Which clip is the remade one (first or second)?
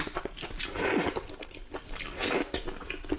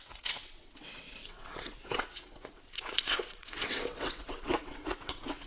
second